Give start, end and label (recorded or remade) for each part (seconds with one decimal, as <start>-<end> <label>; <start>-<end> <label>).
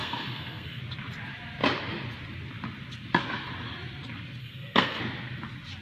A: 0.0-0.8 remade; 0.8-4.4 recorded; 4.4-5.0 remade; 5.0-5.8 recorded